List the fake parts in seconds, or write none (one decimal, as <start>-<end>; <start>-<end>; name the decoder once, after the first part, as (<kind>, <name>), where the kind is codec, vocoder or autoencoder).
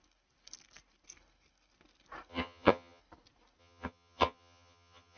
2.3-3.0 (vocoder, HiFi-GAN); 3.6-5.2